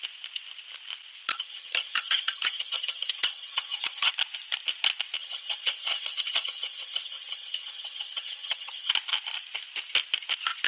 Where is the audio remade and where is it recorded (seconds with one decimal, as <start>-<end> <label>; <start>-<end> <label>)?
0.0-1.3 recorded; 1.3-4.1 remade; 4.1-5.2 recorded; 5.2-8.9 remade; 8.9-10.7 recorded